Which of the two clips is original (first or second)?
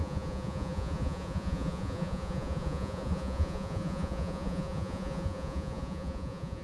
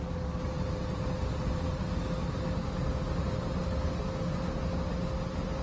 second